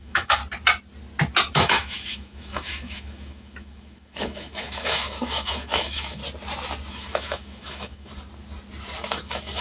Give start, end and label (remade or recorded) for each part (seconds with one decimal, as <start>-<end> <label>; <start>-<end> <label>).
0.0-0.4 remade; 0.4-1.5 recorded; 1.5-6.2 remade; 6.2-6.9 recorded; 6.9-8.1 remade; 8.1-9.0 recorded; 9.0-9.6 remade